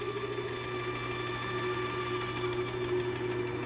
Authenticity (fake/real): real